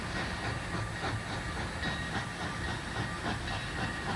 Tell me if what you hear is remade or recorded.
recorded